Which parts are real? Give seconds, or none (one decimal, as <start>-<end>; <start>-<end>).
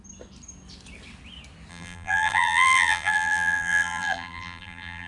0.0-1.7